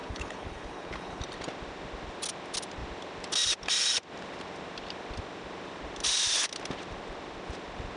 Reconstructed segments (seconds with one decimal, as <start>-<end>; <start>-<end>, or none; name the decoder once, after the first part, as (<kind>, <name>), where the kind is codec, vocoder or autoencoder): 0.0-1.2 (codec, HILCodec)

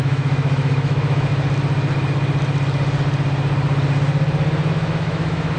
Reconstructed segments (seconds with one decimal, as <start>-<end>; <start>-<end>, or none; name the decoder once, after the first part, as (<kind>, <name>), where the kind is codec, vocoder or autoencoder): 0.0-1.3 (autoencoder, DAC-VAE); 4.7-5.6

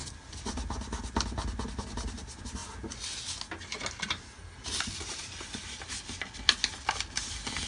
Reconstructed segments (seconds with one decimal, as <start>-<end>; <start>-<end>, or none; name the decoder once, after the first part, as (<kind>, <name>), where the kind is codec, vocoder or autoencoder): none

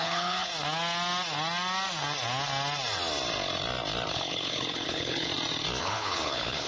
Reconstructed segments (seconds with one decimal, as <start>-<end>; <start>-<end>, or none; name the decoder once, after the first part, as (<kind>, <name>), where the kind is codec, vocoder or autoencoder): 0.0-0.5 (codec, HILCodec); 4.1-5.3; 5.8-6.7

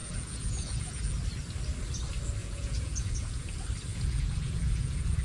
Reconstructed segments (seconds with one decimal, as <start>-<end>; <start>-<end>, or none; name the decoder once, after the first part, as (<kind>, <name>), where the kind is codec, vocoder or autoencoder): 0.0-1.0 (vocoder, Vocos); 2.4-3.5; 3.9-5.2